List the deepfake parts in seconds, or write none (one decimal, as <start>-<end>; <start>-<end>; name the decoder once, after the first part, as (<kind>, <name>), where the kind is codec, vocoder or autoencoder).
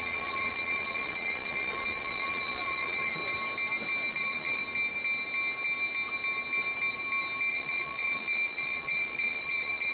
0.0-3.2 (vocoder, Vocos); 4.1-4.6; 7.5-9.9